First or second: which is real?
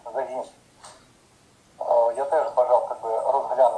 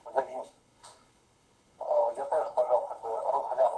first